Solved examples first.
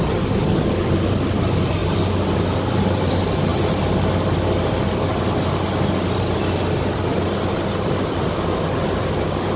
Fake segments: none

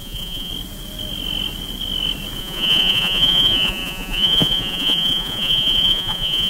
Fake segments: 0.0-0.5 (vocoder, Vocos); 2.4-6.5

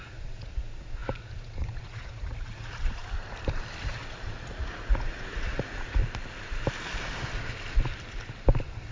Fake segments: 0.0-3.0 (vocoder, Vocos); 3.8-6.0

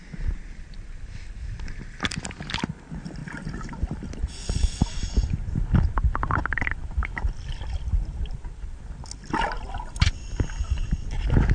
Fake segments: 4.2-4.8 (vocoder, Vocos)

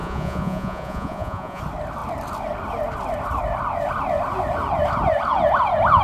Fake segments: 0.0-1.6 (vocoder, Vocos)